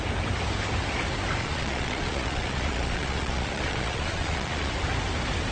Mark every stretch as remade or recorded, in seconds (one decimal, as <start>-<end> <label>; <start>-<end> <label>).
0.0-1.4 recorded; 1.4-4.7 remade; 4.7-5.5 recorded